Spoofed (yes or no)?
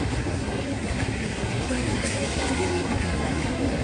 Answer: yes